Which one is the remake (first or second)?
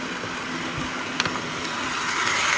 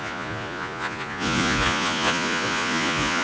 second